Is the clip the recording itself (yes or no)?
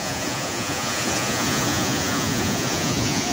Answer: no